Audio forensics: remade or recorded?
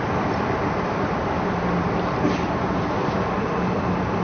remade